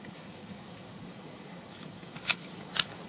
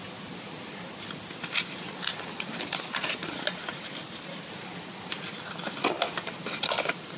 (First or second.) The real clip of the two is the second